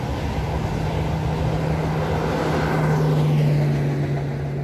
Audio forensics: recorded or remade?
recorded